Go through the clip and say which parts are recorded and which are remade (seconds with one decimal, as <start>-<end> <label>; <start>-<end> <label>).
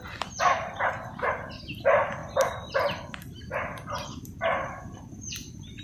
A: 0.0-2.2 recorded; 2.2-5.8 remade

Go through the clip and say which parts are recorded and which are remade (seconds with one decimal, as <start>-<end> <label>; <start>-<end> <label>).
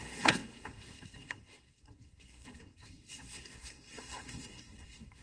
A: 0.0-5.2 remade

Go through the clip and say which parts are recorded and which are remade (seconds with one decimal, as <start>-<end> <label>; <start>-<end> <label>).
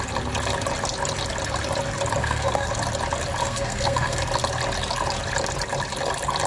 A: 0.0-2.2 recorded; 2.2-2.7 remade; 2.7-3.4 recorded; 3.4-4.2 remade; 4.2-6.5 recorded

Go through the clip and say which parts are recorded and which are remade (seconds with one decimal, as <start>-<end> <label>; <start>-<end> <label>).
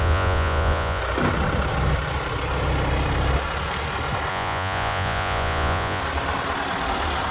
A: 0.0-1.0 remade; 1.0-4.3 recorded; 4.3-6.0 remade; 6.0-7.3 recorded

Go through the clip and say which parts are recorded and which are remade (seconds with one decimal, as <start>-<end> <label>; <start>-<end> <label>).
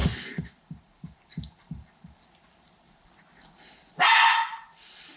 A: 0.0-3.1 remade; 3.1-5.2 recorded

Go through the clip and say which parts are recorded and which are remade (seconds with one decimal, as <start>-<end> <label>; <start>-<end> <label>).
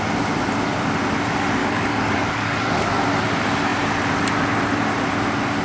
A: 0.0-1.6 recorded; 1.6-3.0 remade; 3.0-5.6 recorded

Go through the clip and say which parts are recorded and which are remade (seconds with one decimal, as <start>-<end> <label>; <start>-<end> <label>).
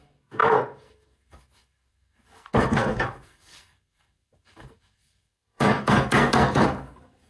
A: 0.0-7.3 remade